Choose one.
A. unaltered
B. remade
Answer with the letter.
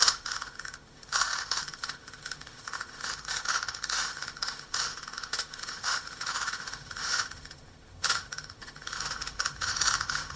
B